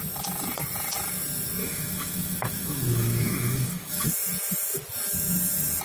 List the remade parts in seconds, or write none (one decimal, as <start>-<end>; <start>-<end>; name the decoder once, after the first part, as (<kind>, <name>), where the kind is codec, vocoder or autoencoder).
1.6-4.1 (autoencoder, DAC-VAE)